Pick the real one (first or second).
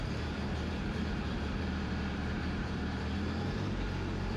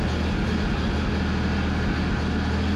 second